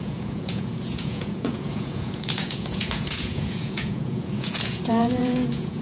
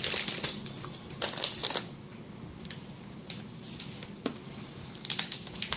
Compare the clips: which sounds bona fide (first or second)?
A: second